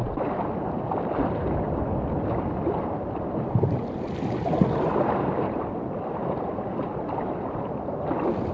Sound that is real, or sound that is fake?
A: real